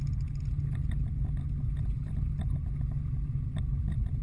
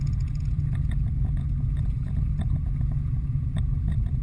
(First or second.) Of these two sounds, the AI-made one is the second